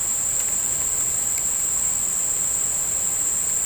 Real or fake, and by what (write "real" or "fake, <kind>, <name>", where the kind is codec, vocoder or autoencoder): real